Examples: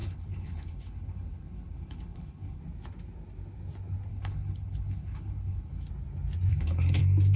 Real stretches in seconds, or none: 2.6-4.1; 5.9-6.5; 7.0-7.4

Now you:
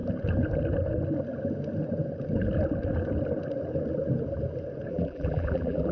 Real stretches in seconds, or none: 0.0-4.9

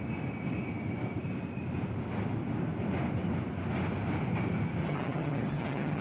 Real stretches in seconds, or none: 0.0-4.8